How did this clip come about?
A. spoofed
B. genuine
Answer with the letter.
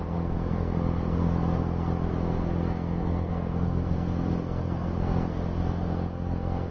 A